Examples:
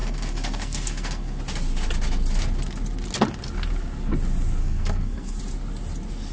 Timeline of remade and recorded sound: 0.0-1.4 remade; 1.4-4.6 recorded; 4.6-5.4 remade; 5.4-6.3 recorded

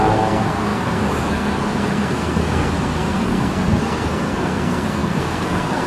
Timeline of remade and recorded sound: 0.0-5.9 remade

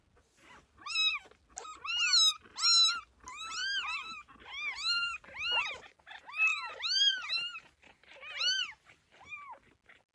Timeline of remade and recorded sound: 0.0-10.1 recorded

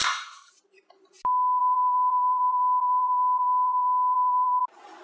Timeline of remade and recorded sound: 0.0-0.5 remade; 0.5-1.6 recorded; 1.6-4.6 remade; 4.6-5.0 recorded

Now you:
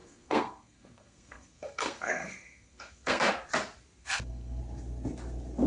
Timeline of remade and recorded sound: 0.0-3.3 remade; 3.3-4.0 recorded; 4.0-4.6 remade; 4.6-5.7 recorded

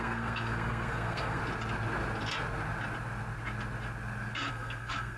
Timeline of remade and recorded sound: 0.0-1.4 remade; 1.4-4.5 recorded; 4.5-5.2 remade

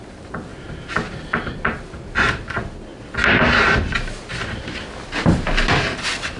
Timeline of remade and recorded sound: 0.0-6.4 recorded